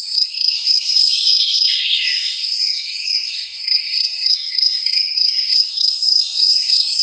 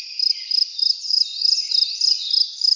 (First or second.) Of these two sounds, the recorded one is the second